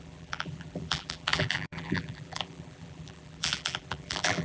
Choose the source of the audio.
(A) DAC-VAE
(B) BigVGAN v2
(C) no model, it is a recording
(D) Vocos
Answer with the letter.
B